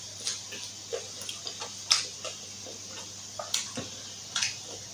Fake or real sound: real